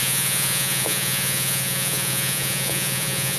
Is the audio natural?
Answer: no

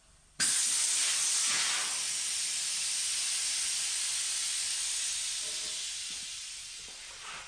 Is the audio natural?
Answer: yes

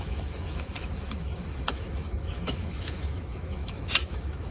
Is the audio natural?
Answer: no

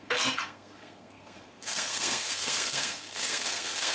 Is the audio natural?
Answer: no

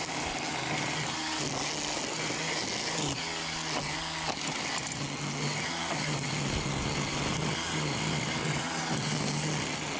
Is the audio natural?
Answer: yes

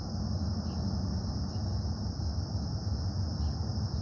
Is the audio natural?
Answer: yes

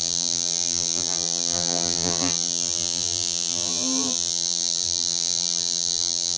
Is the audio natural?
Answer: no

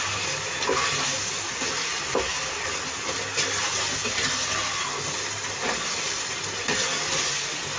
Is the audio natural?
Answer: yes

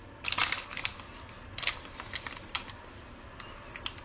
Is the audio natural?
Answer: yes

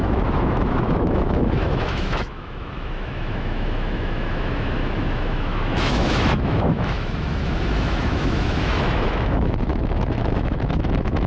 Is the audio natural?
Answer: no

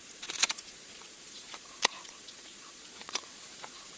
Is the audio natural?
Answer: no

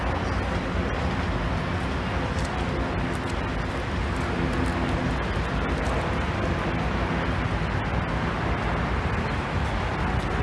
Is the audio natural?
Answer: yes